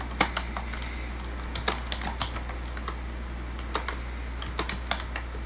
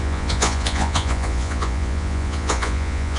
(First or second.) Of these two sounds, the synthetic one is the second